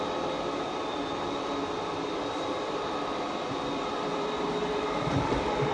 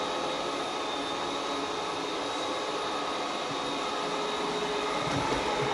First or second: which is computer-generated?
first